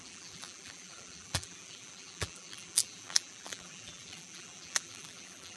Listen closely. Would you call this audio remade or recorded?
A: remade